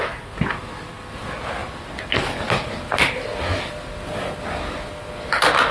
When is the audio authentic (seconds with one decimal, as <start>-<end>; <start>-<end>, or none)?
0.0-5.7